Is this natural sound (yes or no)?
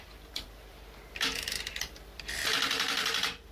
no